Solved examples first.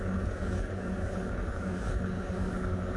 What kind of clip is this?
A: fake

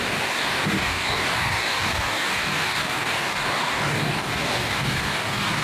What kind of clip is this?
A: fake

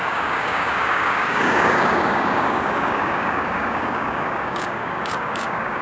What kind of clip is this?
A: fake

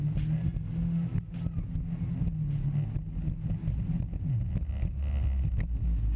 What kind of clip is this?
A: real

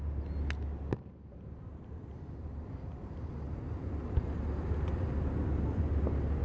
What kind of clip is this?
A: real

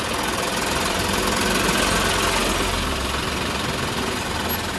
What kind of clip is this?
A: real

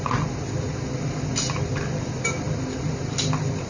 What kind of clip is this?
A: real